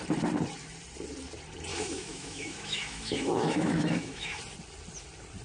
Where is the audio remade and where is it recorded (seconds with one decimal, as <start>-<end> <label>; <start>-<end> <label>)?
0.0-1.7 recorded; 1.7-4.4 remade; 4.4-5.4 recorded